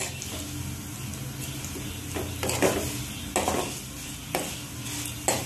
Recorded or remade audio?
recorded